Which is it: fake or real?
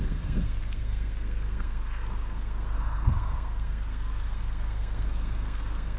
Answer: fake